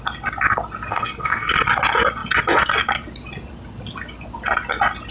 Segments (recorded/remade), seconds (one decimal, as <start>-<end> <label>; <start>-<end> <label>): 0.0-0.9 recorded; 0.9-1.6 remade; 1.6-5.1 recorded